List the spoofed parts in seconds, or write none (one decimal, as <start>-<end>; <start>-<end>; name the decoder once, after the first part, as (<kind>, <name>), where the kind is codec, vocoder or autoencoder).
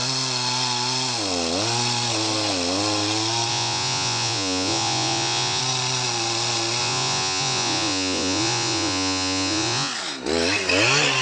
3.5-5.6 (vocoder, Vocos); 6.8-9.9